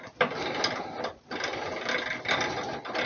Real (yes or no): yes